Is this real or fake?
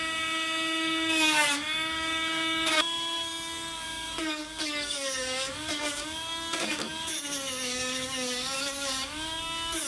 fake